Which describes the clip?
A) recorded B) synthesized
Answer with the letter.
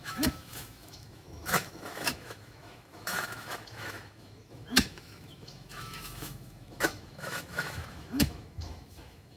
B